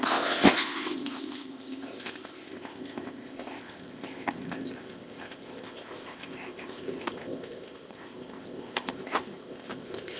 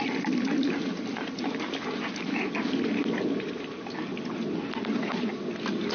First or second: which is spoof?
first